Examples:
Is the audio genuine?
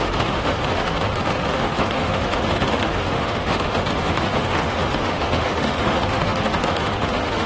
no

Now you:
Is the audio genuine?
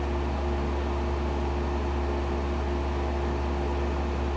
yes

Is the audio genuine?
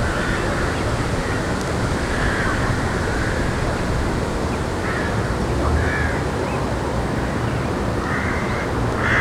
yes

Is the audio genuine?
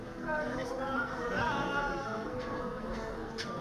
no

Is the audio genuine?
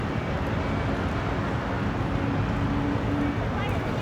yes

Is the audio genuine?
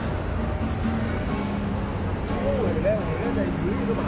yes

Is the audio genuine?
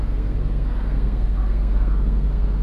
no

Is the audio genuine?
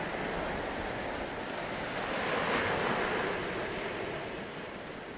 yes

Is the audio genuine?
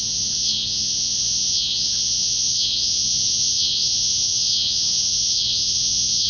no